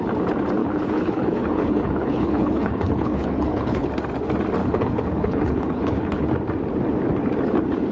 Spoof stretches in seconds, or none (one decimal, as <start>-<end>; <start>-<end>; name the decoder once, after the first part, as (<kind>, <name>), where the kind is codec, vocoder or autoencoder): 0.6-3.9 (codec, HILCodec); 4.6-6.3